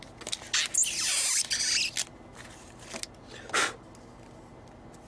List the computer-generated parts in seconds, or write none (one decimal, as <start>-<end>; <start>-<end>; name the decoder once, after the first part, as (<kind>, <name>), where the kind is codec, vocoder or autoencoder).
none